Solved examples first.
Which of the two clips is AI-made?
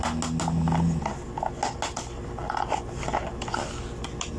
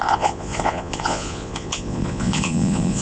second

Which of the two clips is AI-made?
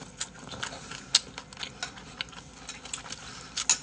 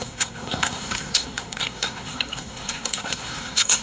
second